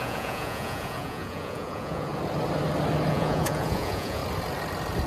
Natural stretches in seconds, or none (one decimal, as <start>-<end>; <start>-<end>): 2.1-3.1; 4.2-5.1